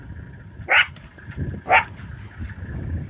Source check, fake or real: real